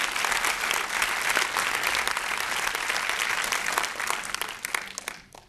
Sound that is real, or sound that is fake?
real